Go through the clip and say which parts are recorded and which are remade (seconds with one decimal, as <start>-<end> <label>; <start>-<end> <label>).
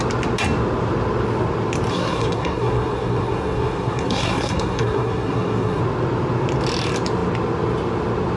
0.0-1.9 recorded; 1.9-5.8 remade; 5.8-8.4 recorded